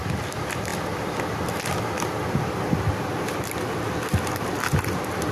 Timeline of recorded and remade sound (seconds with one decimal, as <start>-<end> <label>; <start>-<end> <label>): 0.0-5.3 recorded